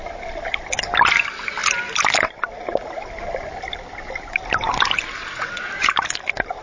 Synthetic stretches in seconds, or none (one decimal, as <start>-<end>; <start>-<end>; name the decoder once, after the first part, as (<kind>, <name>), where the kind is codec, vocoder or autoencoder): 5.2-5.7 (vocoder, WaveNeXt)